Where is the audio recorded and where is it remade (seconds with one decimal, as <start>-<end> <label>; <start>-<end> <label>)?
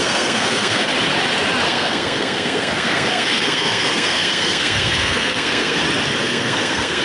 0.0-0.9 remade; 0.9-1.7 recorded; 1.7-5.8 remade; 5.8-6.2 recorded; 6.2-7.0 remade